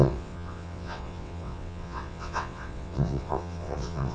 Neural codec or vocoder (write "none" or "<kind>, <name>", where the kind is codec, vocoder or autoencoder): vocoder, WaveNeXt